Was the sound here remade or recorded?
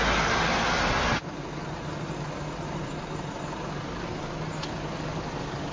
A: recorded